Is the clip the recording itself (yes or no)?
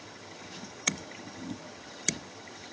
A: no